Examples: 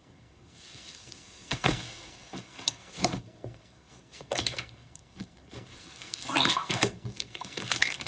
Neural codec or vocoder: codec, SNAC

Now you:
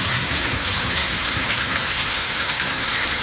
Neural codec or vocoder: codec, SNAC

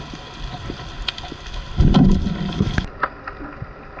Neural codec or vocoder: none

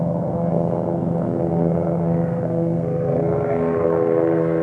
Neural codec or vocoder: codec, SNAC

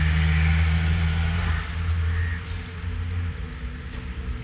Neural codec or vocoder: none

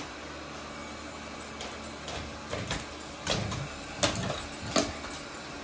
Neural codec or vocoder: none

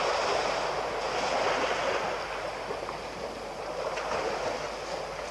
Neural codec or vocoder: none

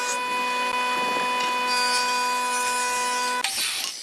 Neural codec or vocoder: none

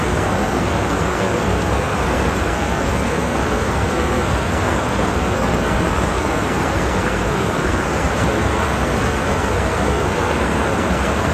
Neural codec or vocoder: codec, SNAC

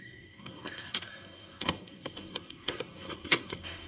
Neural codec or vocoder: codec, SNAC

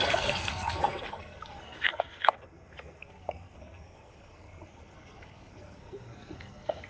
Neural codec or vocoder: codec, SNAC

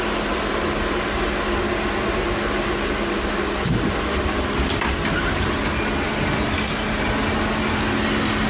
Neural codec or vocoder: none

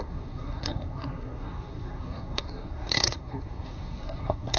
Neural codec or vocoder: codec, SNAC